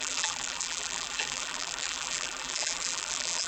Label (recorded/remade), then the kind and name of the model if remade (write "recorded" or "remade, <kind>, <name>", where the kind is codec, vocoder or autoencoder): remade, vocoder, BigVGAN v2